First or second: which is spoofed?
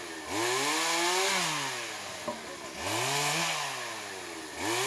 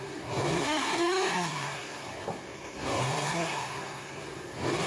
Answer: second